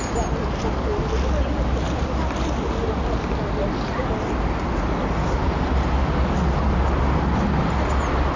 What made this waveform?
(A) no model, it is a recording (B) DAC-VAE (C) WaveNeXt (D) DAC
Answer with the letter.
A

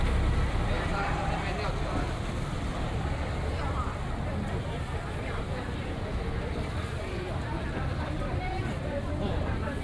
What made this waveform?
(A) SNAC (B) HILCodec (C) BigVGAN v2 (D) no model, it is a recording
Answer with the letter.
C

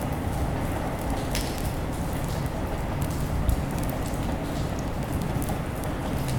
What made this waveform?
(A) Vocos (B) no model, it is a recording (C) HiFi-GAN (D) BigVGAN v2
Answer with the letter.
B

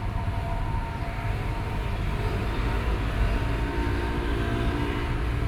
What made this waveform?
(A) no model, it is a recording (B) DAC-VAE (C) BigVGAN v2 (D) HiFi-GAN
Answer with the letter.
A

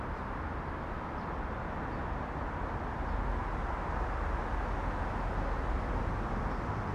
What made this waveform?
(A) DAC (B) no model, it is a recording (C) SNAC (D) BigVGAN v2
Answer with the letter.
B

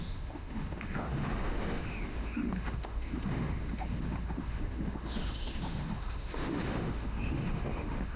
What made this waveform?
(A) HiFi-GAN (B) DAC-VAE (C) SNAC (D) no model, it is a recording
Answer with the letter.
B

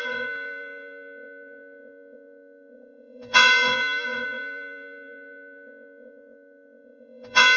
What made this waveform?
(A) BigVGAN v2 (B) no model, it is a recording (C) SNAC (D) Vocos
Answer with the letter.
D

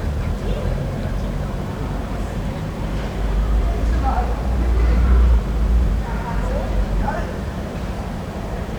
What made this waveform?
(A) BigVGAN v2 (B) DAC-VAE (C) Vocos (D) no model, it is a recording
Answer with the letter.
A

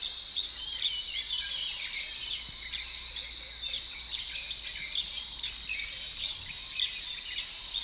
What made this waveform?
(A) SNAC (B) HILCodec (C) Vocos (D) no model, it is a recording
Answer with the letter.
D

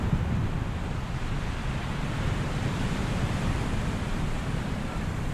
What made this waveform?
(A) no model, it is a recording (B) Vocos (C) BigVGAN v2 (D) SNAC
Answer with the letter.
C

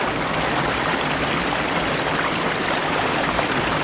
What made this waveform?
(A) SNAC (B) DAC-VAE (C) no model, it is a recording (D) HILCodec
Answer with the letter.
C